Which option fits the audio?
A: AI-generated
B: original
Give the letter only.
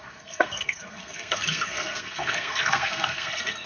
A